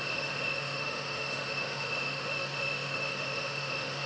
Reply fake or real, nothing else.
fake